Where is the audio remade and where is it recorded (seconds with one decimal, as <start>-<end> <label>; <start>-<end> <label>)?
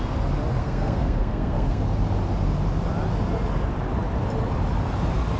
0.0-0.6 recorded; 0.6-1.8 remade; 1.8-5.4 recorded